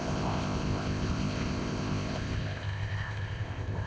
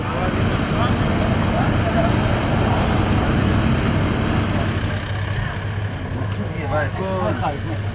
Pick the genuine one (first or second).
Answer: second